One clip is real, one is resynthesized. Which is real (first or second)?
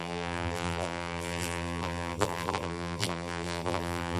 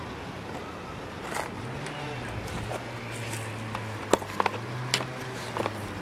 second